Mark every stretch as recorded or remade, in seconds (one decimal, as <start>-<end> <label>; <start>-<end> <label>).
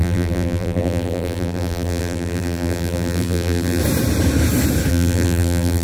0.0-3.8 remade; 3.8-4.9 recorded; 4.9-5.8 remade